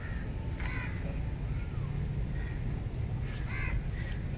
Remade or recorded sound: recorded